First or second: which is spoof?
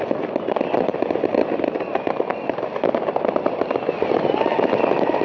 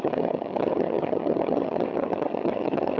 second